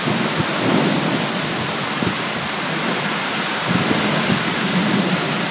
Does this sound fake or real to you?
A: real